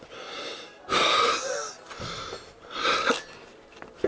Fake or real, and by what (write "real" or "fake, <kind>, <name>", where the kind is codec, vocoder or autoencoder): real